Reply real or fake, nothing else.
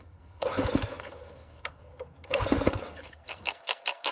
fake